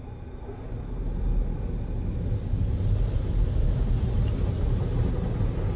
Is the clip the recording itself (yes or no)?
yes